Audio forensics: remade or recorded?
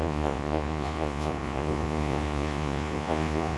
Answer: remade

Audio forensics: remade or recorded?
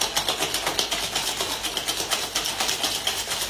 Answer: recorded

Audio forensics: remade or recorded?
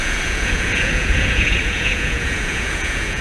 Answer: remade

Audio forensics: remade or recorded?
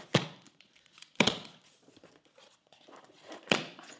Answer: remade